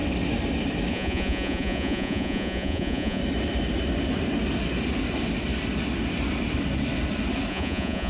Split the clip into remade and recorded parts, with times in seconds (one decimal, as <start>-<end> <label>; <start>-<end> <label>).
0.0-0.9 recorded; 0.9-3.2 remade; 3.2-7.5 recorded; 7.5-8.1 remade